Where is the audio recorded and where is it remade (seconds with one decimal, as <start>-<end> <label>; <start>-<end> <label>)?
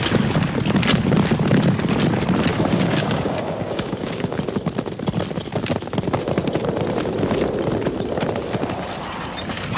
0.0-2.5 recorded; 2.5-4.4 remade; 4.4-9.8 recorded